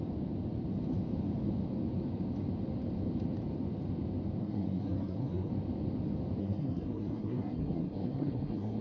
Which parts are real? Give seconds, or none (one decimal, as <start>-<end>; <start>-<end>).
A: 0.0-4.4; 5.5-6.4